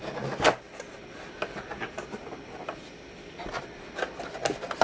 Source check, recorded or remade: recorded